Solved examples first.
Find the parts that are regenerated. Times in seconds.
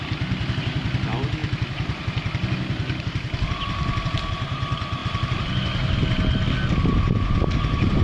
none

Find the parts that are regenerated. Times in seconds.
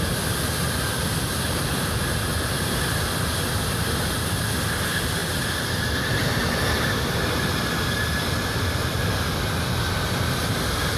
none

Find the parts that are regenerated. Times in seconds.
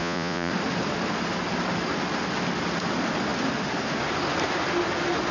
0.0-0.5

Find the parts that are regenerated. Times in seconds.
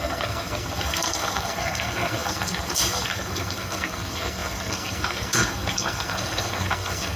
0.0-7.2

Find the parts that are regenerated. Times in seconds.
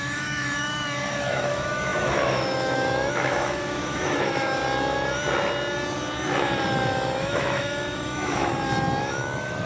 0.0-4.6; 7.2-8.5; 9.0-9.7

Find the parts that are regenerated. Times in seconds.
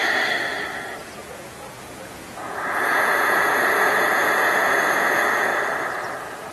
1.2-5.5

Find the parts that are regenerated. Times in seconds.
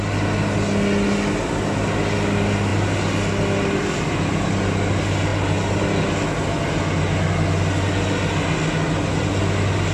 none